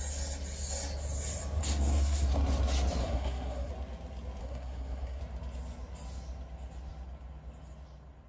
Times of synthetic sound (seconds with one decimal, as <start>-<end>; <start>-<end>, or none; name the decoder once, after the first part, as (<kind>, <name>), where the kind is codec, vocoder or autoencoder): 1.6-2.3 (codec, SNAC); 3.0-3.7; 4.4-5.2